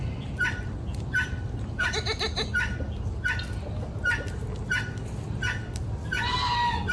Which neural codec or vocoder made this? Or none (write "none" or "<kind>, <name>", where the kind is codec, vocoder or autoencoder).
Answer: none